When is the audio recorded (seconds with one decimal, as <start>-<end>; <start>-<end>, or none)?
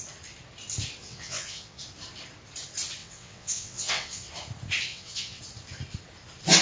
0.0-1.0; 1.8-3.0; 4.3-4.9; 5.4-6.6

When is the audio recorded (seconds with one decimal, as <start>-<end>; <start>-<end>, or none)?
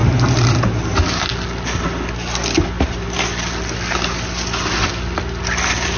0.0-6.0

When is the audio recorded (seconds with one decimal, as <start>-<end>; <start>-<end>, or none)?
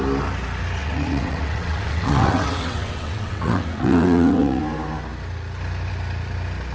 0.0-0.8; 4.6-6.7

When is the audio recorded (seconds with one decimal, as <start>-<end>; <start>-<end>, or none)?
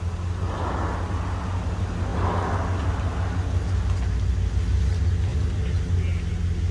0.0-6.7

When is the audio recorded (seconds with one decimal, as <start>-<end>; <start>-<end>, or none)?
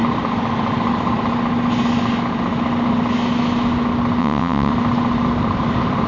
0.0-4.2; 4.7-6.1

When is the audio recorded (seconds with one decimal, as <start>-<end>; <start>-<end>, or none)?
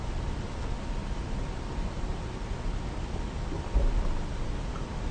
0.0-5.1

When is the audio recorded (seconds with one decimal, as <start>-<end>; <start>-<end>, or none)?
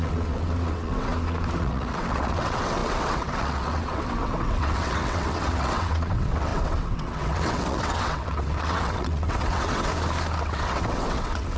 1.1-1.6; 9.9-10.4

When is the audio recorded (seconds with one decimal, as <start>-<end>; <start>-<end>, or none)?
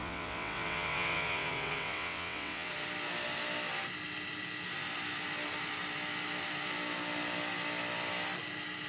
2.7-8.9